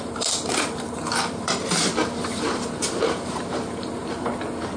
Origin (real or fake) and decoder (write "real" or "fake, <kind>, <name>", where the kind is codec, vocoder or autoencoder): fake, vocoder, BigVGAN v2